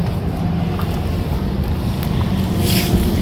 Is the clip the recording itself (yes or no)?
yes